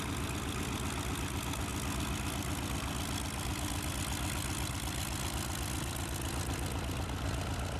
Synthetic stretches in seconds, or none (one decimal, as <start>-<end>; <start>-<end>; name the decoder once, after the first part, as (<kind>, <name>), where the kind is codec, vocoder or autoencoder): none